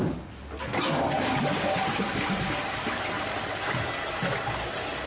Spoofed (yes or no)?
no